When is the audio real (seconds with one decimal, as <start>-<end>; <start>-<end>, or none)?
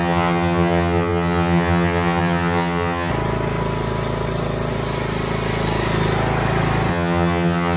3.1-6.9